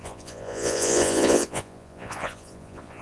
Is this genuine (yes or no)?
no